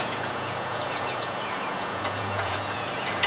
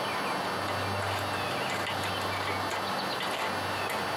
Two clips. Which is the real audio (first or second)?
second